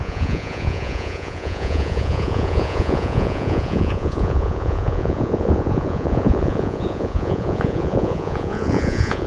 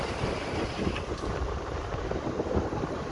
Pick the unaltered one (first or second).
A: second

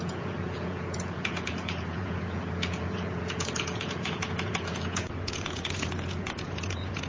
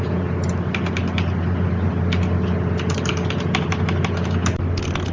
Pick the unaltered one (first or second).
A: second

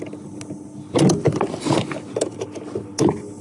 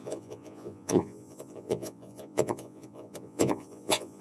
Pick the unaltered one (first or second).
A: first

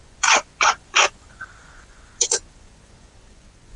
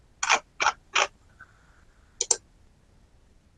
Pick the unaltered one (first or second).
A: second